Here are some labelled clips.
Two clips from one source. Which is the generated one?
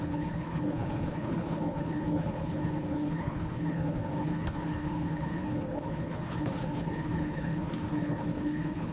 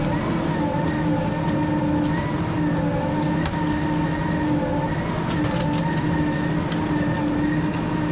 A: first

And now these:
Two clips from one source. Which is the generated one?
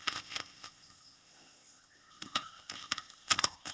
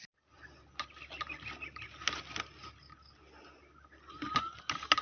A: first